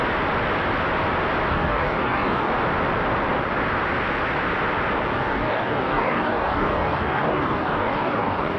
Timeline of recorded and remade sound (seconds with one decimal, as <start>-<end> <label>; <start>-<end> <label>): 0.0-1.5 recorded; 1.5-2.5 remade; 2.5-5.1 recorded; 5.1-8.6 remade